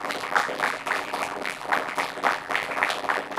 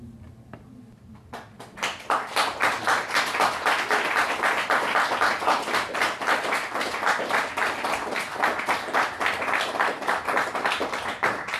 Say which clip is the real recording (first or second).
second